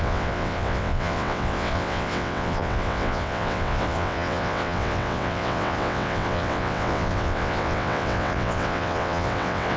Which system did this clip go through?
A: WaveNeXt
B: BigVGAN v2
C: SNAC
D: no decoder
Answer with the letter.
A